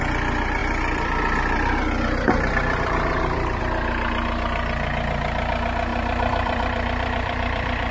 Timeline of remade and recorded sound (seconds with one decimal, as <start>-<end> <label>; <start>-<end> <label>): 0.0-0.6 recorded; 0.6-3.6 remade; 3.6-5.9 recorded; 5.9-7.9 remade

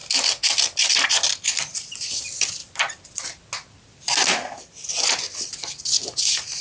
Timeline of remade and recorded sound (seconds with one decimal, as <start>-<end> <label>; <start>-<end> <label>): 0.0-6.6 recorded